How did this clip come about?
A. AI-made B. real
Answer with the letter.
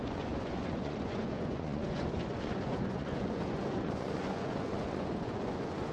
A